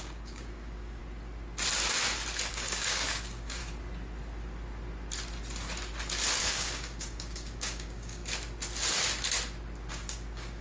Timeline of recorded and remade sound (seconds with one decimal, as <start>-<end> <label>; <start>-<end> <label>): 0.0-1.0 remade; 1.0-2.5 recorded; 2.5-3.6 remade; 3.6-6.4 recorded; 6.4-8.2 remade; 8.2-9.9 recorded; 9.9-10.6 remade